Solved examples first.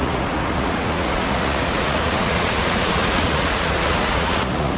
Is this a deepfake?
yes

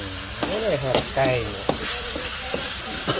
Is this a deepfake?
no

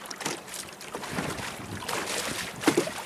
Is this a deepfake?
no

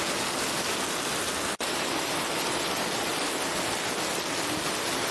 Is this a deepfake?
no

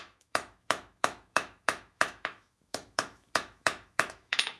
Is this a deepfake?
yes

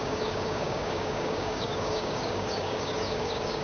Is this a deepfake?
yes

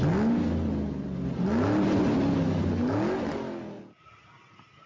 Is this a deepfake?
no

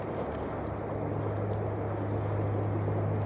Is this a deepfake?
no